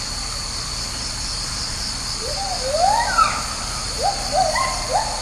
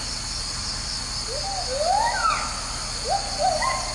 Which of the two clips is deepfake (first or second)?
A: first